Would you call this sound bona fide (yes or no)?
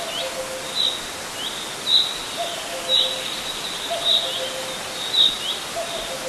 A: yes